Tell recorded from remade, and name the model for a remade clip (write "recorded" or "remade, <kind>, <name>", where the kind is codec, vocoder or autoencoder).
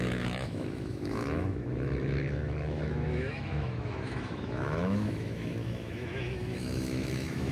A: remade, autoencoder, DAC-VAE